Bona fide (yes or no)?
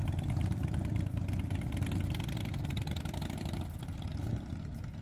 yes